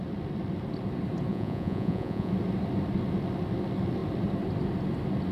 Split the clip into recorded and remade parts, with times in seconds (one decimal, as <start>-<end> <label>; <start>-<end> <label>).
0.0-1.3 recorded; 1.3-2.3 remade; 2.3-5.3 recorded